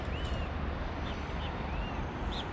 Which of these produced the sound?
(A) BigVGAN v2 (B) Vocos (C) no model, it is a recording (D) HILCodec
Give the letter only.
C